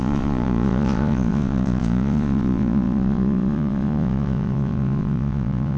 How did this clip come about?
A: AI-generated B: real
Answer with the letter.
A